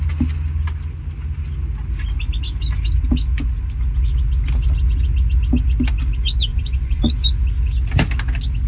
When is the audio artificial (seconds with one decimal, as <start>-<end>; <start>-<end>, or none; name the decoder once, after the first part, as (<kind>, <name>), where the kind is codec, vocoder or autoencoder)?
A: 6.5-7.1 (vocoder, Vocos)